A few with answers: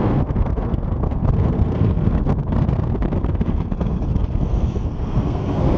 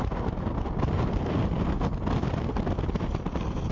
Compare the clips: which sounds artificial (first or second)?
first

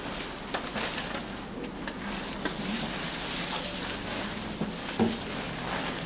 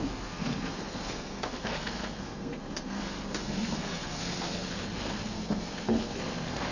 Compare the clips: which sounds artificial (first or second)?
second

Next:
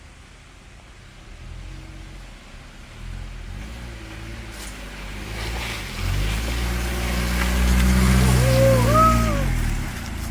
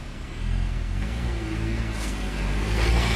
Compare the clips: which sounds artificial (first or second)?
second